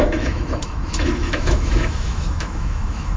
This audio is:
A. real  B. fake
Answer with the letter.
B